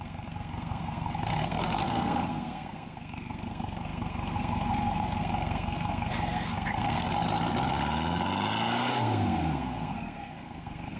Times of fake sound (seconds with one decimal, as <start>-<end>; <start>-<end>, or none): 0.0-7.1; 8.9-11.0